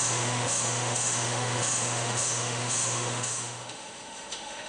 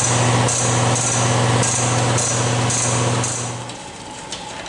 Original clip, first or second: second